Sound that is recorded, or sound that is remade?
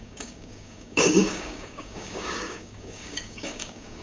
remade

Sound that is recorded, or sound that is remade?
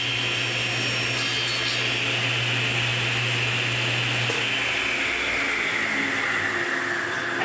recorded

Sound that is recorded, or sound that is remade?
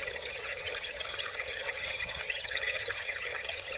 remade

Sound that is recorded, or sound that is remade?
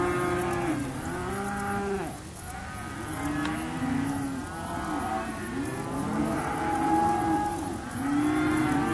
recorded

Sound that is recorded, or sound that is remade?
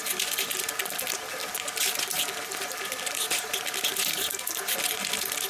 recorded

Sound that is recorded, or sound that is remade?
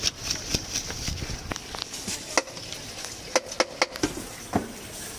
recorded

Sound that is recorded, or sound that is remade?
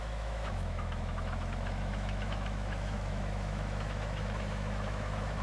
remade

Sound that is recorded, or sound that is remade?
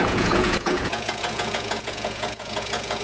remade